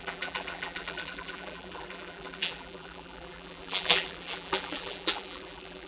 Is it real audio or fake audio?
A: fake